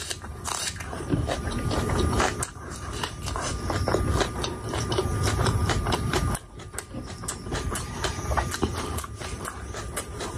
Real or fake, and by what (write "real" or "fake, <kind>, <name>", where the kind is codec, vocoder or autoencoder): fake, vocoder, BigVGAN v2